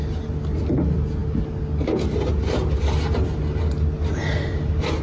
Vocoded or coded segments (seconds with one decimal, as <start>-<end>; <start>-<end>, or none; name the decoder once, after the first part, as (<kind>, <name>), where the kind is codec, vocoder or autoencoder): none